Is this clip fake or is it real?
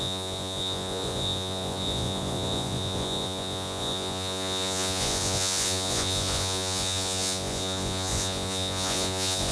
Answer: fake